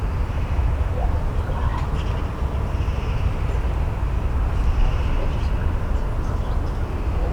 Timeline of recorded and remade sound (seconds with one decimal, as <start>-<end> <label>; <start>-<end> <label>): 0.0-7.3 recorded